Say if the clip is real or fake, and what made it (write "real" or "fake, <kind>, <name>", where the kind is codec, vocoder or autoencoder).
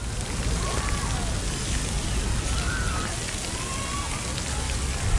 real